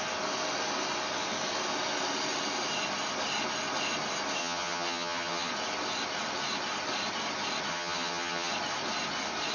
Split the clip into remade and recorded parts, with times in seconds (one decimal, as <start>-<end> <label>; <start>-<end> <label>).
0.0-4.4 recorded; 4.4-5.5 remade; 5.5-7.7 recorded; 7.7-8.5 remade; 8.5-9.5 recorded